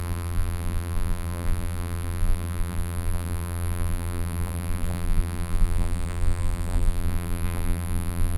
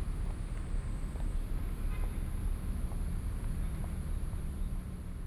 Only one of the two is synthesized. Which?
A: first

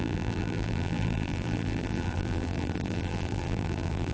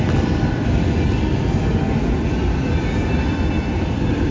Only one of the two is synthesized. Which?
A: first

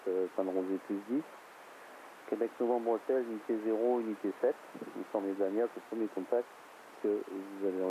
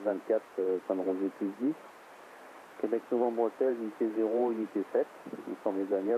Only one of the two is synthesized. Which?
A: second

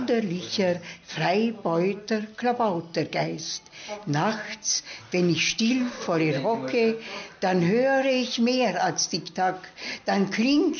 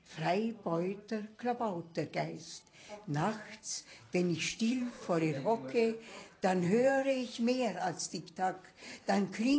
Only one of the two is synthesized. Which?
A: second